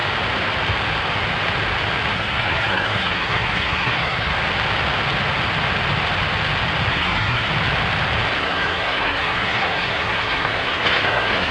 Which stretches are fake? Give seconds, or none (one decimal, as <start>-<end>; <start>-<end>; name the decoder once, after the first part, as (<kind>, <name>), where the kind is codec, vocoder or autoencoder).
2.1-4.3 (codec, SNAC); 6.9-7.5; 8.4-11.5